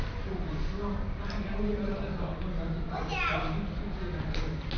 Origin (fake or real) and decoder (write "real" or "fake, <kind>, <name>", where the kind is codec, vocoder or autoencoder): real